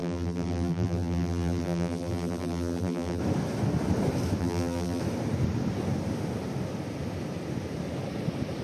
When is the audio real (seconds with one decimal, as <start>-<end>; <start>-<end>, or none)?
3.2-4.4; 5.0-8.6